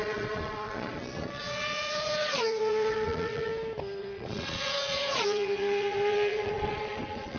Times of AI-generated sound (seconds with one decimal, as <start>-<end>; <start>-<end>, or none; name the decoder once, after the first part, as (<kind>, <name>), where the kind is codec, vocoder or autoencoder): 0.0-3.5 (vocoder, Vocos); 4.0-7.4